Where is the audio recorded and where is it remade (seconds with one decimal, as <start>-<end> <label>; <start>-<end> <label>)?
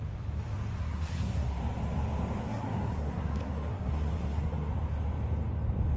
0.0-0.8 recorded; 0.8-1.6 remade; 1.6-2.4 recorded; 2.4-4.7 remade; 4.7-6.0 recorded